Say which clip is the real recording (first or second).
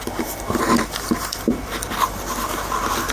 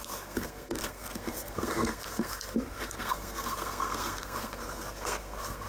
first